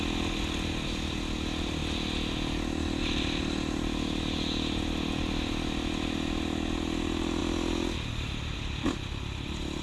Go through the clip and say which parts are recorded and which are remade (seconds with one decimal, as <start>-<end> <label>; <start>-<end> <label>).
0.0-9.8 recorded